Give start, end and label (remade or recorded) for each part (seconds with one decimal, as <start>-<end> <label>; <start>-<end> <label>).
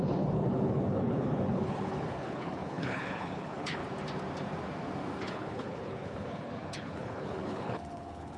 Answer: 0.0-3.8 remade; 3.8-5.2 recorded; 5.2-8.4 remade